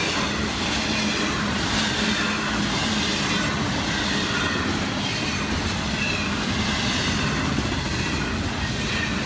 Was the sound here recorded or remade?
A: recorded